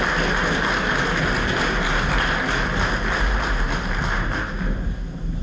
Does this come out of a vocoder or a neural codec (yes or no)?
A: no